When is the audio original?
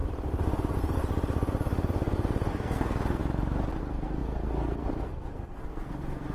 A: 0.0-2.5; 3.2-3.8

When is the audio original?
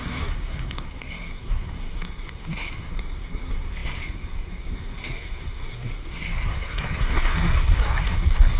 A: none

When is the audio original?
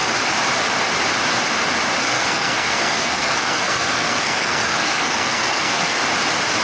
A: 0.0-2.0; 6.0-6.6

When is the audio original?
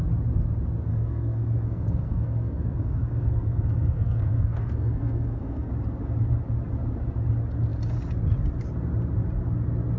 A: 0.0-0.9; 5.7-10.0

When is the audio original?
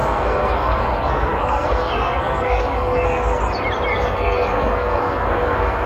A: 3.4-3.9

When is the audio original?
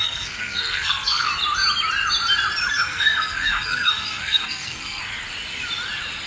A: 1.3-2.7; 5.0-6.3